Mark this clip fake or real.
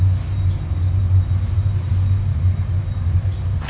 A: real